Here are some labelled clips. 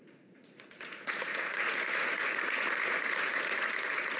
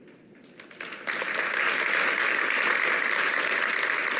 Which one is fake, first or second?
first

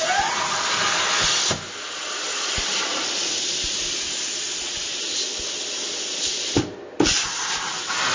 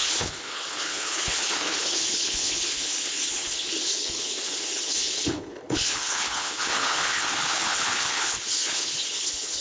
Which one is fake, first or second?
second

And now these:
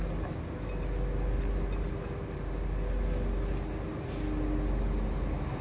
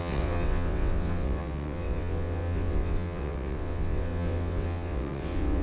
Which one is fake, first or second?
second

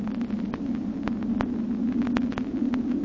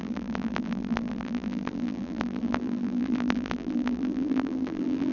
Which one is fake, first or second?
second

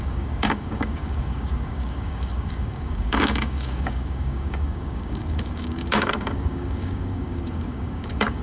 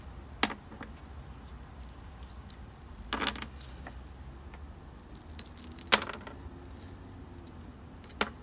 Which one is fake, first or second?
first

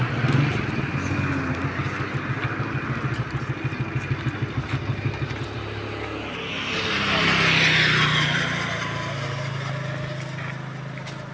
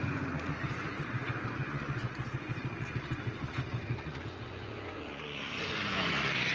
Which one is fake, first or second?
second